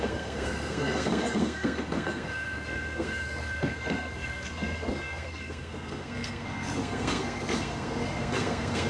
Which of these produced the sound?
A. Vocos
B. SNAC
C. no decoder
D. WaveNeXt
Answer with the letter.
B